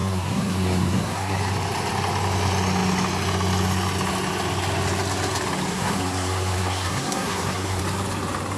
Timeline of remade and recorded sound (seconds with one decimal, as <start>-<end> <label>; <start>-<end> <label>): 0.0-1.4 remade; 1.4-5.7 recorded; 5.7-7.8 remade; 7.8-8.6 recorded